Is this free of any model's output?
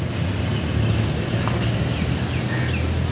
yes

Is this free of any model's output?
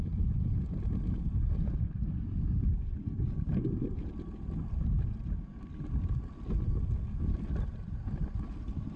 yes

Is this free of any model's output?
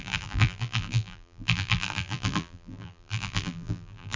no